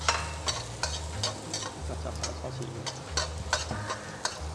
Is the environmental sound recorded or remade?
recorded